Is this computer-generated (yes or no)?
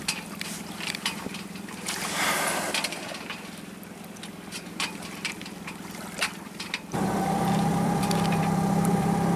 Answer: yes